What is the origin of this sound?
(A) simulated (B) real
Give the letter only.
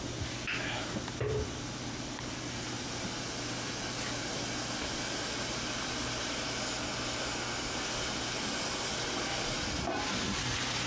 B